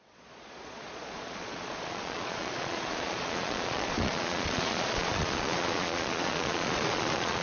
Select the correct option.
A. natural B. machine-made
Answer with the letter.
B